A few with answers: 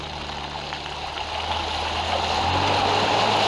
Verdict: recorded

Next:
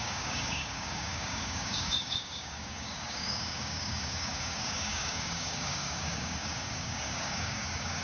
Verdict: remade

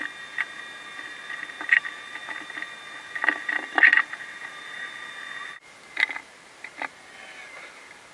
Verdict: recorded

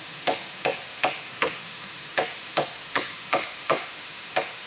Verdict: remade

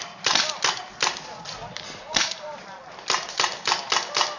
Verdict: recorded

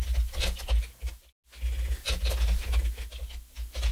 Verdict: recorded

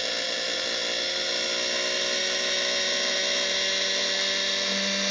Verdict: recorded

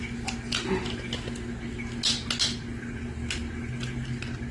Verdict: recorded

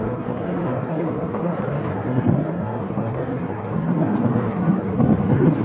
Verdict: remade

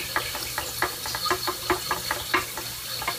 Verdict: recorded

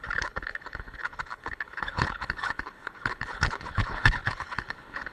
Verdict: remade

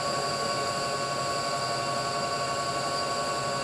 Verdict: recorded